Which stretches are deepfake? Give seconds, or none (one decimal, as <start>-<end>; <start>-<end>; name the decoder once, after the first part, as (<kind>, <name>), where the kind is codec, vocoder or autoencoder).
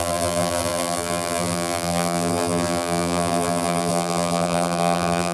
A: 0.0-5.3 (vocoder, BigVGAN v2)